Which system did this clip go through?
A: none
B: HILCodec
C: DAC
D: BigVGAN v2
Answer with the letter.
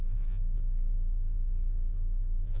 D